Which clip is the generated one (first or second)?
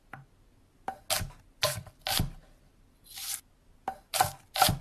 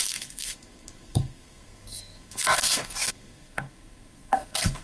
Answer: second